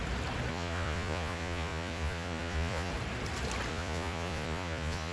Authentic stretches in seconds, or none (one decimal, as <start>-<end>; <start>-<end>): 0.0-0.5; 2.9-3.7